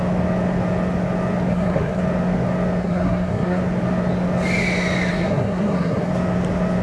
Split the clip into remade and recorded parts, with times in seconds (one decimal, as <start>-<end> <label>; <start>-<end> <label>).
0.0-1.5 recorded; 1.5-2.0 remade; 2.0-2.8 recorded; 2.8-3.6 remade; 3.6-5.1 recorded; 5.1-6.1 remade; 6.1-6.8 recorded